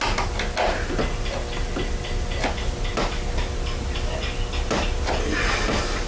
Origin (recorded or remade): recorded